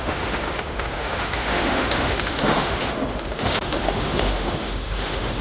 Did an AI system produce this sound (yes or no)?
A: yes